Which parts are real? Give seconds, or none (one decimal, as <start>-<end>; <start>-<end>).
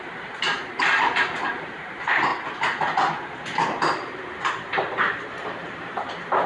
2.3-3.8